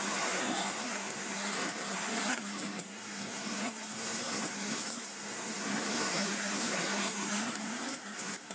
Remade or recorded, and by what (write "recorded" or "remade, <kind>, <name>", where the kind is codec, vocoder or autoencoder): remade, codec, SNAC